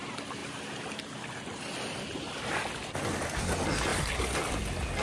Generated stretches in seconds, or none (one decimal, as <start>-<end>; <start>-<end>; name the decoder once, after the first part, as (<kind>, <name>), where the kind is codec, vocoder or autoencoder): none